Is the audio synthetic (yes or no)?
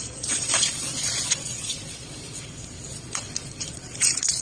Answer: yes